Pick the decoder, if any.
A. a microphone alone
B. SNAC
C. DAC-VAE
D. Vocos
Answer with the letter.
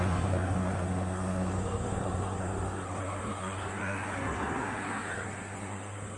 B